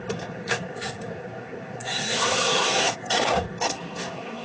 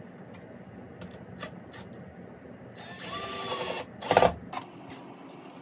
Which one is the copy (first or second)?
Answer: first